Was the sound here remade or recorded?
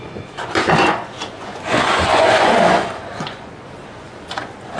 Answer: remade